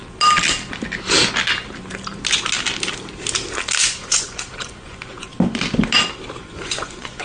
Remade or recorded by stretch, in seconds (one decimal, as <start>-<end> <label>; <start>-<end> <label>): 0.0-3.8 recorded; 3.8-5.3 remade; 5.3-6.4 recorded; 6.4-7.2 remade